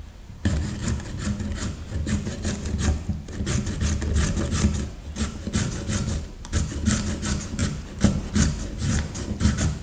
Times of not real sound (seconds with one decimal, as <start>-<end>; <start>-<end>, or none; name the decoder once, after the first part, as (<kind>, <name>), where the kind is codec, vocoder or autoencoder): 7.6-8.3 (vocoder, BigVGAN v2)